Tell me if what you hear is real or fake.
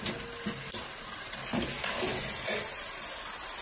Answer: real